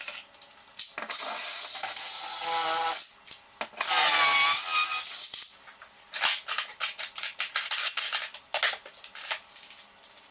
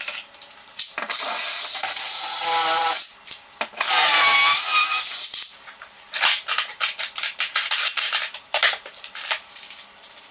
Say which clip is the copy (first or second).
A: second